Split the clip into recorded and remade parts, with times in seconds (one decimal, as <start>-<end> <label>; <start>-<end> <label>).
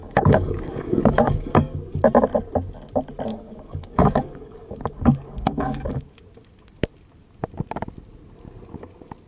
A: 0.0-2.0 remade; 2.0-3.3 recorded; 3.3-6.0 remade; 6.0-9.3 recorded